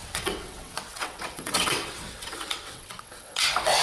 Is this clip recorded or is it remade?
remade